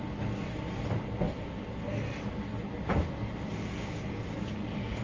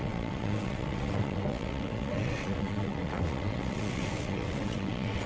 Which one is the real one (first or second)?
first